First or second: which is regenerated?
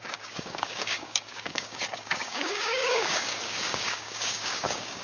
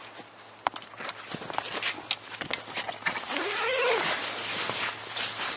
first